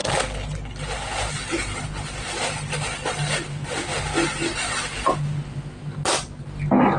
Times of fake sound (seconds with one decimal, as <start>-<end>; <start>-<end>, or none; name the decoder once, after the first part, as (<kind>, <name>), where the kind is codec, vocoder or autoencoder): none